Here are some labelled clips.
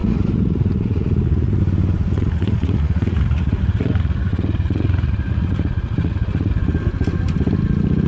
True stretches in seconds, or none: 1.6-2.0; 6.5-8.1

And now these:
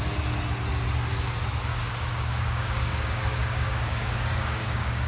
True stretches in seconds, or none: 0.0-1.7

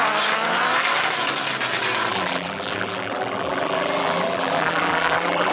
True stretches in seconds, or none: 0.0-2.1

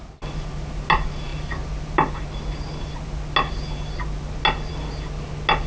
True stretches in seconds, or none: 0.0-5.7

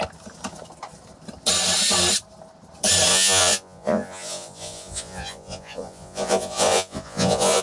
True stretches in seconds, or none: 0.0-3.1

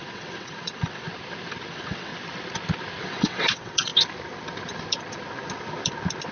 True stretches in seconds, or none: 1.1-1.7; 2.1-3.0; 3.9-6.3